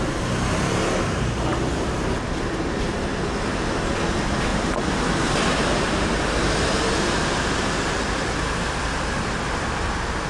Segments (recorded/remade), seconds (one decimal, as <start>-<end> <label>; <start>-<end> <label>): 0.0-4.5 recorded; 4.5-8.0 remade; 8.0-10.3 recorded